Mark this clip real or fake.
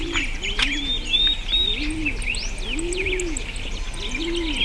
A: real